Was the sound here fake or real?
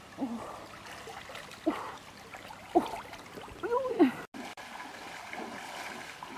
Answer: real